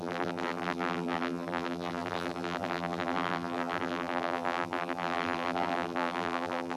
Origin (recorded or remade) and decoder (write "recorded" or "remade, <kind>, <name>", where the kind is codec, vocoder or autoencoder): remade, vocoder, BigVGAN v2